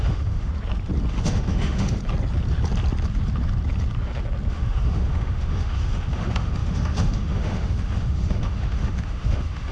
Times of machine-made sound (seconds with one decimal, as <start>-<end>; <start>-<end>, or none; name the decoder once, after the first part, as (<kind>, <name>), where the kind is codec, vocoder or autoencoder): 0.0-0.5 (autoencoder, DAC-VAE); 1.1-2.0; 4.5-9.7